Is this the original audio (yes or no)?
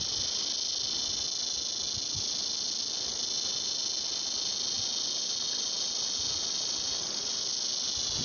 yes